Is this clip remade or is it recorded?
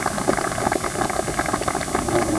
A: recorded